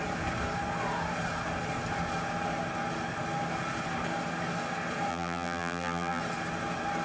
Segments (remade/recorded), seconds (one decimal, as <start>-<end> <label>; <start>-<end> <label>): 0.0-5.1 recorded; 5.1-6.2 remade; 6.2-7.0 recorded